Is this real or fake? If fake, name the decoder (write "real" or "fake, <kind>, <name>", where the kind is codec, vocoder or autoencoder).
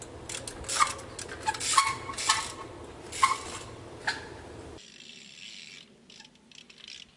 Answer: real